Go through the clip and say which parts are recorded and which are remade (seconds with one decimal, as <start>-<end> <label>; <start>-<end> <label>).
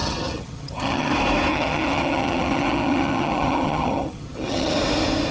0.0-1.1 remade; 1.1-1.5 recorded; 1.5-4.7 remade; 4.7-5.3 recorded